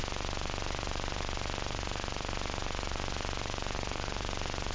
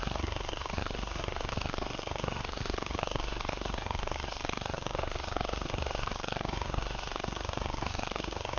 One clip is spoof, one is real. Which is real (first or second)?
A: first